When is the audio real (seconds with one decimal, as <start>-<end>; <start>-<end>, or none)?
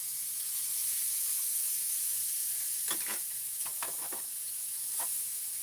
none